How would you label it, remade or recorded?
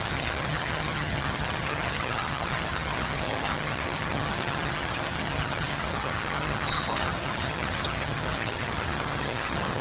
remade